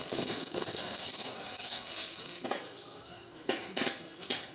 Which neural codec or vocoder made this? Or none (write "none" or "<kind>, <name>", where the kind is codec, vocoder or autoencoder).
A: codec, SNAC